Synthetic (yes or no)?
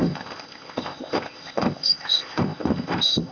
yes